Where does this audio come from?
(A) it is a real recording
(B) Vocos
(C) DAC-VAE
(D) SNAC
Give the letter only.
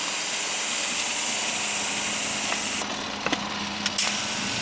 A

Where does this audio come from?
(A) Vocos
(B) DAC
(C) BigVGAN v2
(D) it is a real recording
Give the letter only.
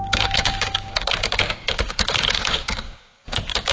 B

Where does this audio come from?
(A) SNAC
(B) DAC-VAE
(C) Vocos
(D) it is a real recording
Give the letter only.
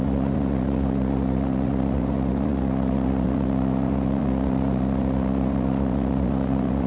C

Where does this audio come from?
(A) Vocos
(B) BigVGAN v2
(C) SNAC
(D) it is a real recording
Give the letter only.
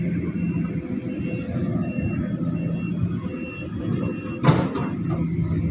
D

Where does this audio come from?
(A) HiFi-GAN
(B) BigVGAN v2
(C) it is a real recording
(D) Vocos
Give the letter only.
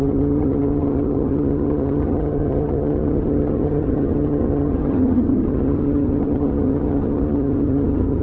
A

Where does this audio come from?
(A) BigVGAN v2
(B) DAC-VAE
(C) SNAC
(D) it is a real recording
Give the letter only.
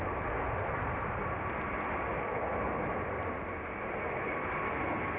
D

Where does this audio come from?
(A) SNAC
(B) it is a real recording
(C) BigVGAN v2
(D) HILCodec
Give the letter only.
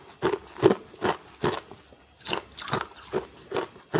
B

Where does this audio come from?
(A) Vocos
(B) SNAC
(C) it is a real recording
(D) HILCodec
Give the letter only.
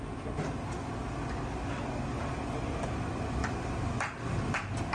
C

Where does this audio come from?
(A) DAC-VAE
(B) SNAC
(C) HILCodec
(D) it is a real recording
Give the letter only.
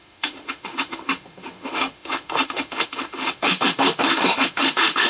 A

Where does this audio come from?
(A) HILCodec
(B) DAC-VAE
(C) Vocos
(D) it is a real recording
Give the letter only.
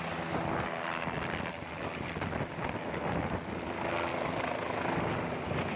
D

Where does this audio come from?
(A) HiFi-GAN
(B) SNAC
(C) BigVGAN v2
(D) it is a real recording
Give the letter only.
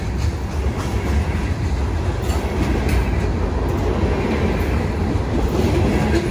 D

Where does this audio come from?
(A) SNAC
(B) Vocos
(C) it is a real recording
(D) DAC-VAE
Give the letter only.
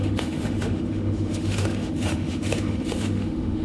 D